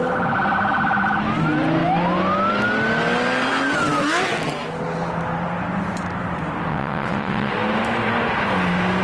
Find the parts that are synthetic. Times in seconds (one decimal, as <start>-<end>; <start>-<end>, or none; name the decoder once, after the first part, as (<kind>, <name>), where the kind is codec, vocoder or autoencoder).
6.7-7.5 (vocoder, WaveNeXt)